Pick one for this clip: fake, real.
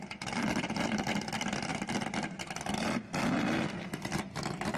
fake